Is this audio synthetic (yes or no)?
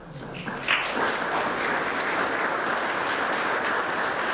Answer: no